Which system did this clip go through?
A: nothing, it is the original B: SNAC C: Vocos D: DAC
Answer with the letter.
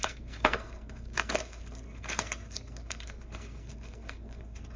B